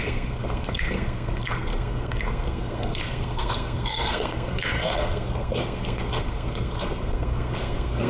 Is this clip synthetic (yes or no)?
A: yes